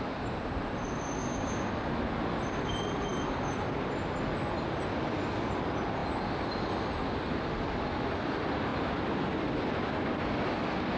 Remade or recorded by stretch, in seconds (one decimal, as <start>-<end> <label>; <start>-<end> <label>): 0.0-1.2 recorded; 1.2-1.7 remade; 1.7-11.0 recorded